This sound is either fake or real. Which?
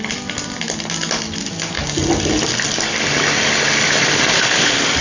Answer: real